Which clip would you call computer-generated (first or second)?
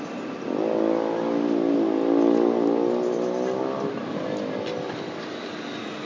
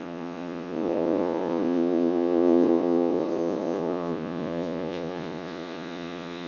second